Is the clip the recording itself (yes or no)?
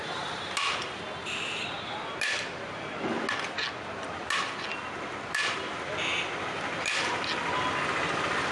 yes